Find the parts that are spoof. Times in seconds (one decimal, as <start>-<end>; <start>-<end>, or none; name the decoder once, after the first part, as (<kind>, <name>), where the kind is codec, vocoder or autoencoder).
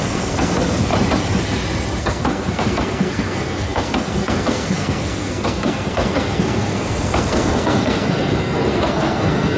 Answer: 0.0-0.9 (codec, SNAC); 2.0-9.6